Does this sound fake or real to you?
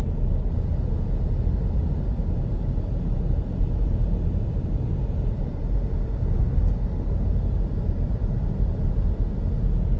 real